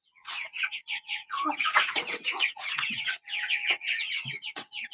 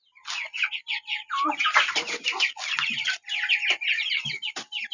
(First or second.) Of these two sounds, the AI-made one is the first